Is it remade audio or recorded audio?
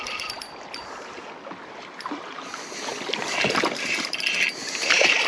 recorded